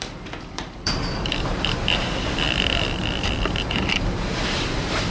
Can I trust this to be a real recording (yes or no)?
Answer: no